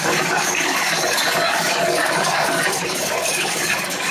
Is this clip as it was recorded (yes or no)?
no